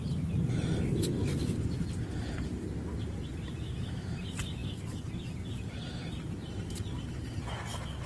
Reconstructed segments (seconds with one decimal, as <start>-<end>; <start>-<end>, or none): none